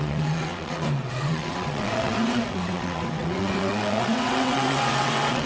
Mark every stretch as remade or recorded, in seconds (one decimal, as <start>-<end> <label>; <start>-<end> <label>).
0.0-5.5 remade